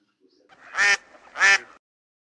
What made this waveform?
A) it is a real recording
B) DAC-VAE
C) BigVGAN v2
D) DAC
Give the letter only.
A